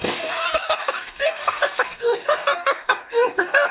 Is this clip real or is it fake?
fake